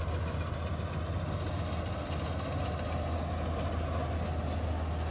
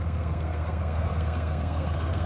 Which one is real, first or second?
first